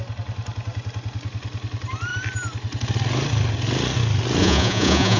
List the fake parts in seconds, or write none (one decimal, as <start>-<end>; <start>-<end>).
4.4-5.2